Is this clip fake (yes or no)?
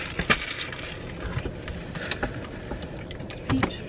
no